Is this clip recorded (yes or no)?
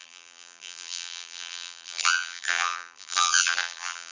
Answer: no